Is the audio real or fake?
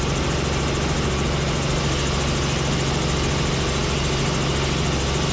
real